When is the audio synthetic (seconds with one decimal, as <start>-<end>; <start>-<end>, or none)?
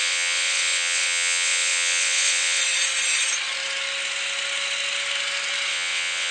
0.0-2.6; 5.7-6.3